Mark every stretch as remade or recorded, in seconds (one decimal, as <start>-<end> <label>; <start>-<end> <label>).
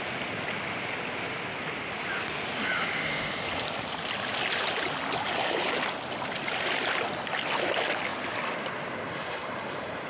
0.0-10.1 recorded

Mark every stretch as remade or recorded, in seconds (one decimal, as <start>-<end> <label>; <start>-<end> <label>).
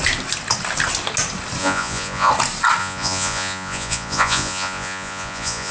0.0-1.6 recorded; 1.6-2.3 remade; 2.3-2.8 recorded; 2.8-5.7 remade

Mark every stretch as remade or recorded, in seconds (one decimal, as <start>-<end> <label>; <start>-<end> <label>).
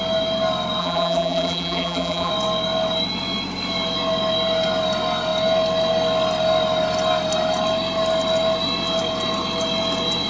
0.0-0.8 recorded; 0.8-2.3 remade; 2.3-10.3 recorded